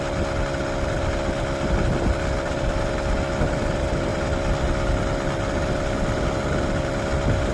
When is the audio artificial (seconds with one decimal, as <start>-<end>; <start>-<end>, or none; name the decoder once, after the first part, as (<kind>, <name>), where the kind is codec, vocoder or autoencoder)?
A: none